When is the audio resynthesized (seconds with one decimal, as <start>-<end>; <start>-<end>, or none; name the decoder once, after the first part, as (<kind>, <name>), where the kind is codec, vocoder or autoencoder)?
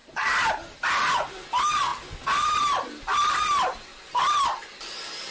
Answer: 0.0-1.9 (vocoder, BigVGAN v2); 3.0-5.3